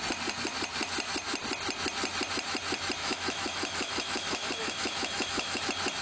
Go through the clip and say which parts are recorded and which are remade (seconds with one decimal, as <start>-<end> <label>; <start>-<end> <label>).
0.0-3.0 recorded; 3.0-5.6 remade; 5.6-6.0 recorded